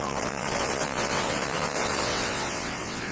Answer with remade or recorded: remade